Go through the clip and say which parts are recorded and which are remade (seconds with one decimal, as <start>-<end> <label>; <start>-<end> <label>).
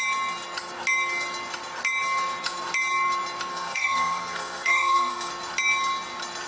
0.0-3.5 recorded; 3.5-5.3 remade; 5.3-6.5 recorded